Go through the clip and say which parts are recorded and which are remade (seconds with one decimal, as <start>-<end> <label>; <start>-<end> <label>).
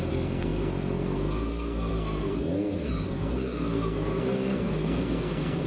0.0-5.7 remade